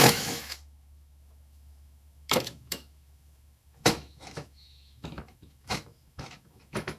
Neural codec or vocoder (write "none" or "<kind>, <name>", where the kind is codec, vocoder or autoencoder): autoencoder, DAC-VAE